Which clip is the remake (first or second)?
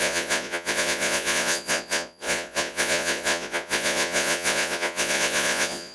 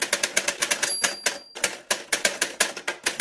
first